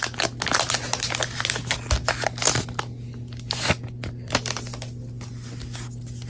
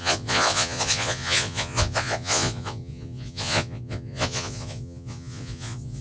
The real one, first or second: first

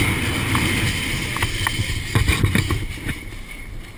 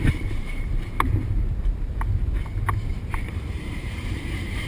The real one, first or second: first